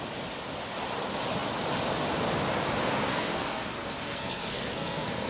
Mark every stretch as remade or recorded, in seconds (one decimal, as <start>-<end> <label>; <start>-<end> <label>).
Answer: 0.0-3.1 recorded; 3.1-5.3 remade